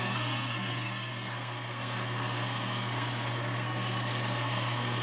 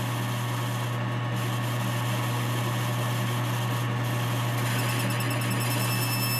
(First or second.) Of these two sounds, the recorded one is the second